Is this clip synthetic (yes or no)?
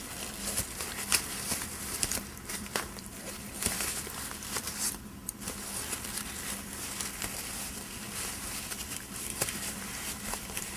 yes